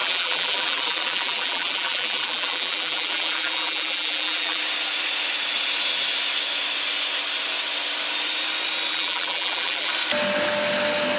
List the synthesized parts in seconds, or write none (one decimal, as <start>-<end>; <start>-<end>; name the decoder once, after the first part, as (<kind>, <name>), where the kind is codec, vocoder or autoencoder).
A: 0.0-4.6 (vocoder, BigVGAN v2); 8.9-9.9